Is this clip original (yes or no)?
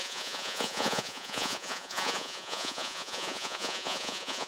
no